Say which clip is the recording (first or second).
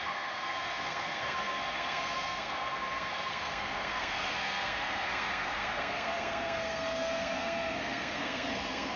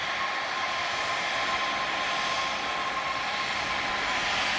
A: second